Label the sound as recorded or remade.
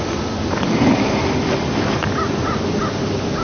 recorded